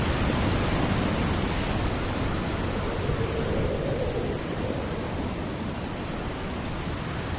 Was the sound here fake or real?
real